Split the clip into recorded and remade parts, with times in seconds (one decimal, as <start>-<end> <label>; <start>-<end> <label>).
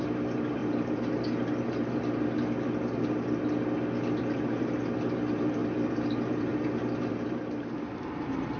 0.0-0.6 remade; 0.6-5.0 recorded; 5.0-5.6 remade; 5.6-6.1 recorded; 6.1-6.5 remade; 6.5-7.1 recorded; 7.1-8.6 remade